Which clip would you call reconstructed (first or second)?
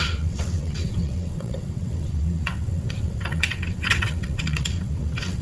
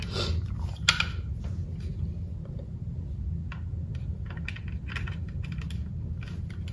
first